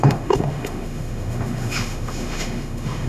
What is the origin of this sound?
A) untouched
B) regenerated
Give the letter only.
B